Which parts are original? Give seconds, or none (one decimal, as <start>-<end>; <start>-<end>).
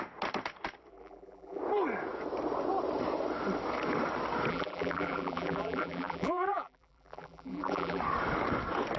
0.0-0.9; 1.6-4.5; 8.0-9.0